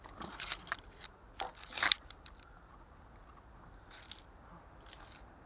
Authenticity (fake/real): real